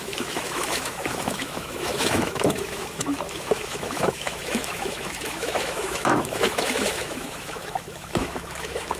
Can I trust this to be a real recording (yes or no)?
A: no